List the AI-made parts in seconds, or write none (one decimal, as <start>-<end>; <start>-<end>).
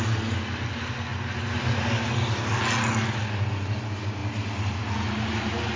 none